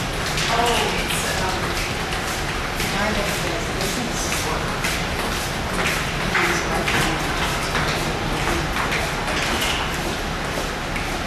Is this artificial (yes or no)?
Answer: no